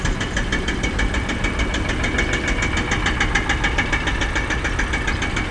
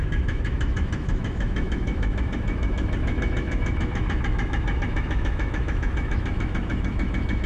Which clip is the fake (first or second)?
second